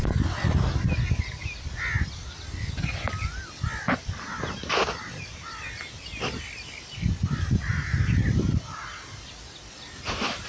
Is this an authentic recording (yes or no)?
yes